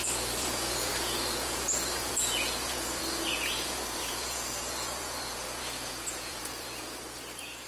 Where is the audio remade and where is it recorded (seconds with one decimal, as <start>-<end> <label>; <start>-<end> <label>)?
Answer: 0.0-7.7 remade